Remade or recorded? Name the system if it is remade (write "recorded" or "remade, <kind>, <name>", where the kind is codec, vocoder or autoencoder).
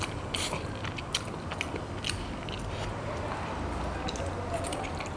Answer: recorded